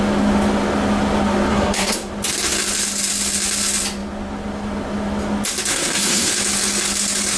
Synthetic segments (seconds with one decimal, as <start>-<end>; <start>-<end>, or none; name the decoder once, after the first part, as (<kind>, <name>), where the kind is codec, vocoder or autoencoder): 1.5-2.1 (codec, SNAC); 5.7-6.3